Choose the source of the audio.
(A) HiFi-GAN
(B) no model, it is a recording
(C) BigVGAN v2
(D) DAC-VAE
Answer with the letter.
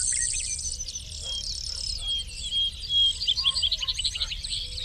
B